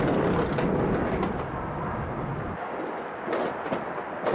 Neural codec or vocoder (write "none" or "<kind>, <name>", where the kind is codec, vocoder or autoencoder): none